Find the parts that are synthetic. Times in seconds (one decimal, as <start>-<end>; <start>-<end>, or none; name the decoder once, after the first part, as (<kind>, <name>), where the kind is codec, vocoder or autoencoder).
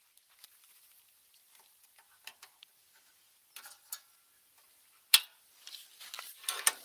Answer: 0.0-2.3 (vocoder, BigVGAN v2); 6.2-6.8